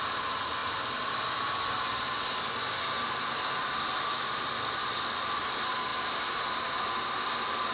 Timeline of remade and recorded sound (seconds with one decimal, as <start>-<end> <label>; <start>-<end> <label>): 0.0-7.7 recorded